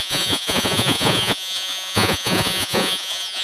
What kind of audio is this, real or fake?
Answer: fake